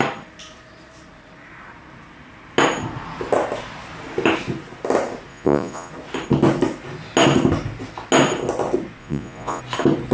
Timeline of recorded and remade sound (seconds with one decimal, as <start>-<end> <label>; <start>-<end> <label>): 0.0-5.3 recorded; 5.3-5.9 remade; 5.9-9.0 recorded; 9.0-9.6 remade; 9.6-10.1 recorded

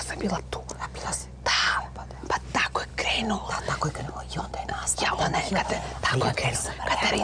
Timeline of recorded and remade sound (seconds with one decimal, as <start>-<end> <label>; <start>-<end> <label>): 0.0-6.0 recorded; 6.0-6.7 remade; 6.7-7.2 recorded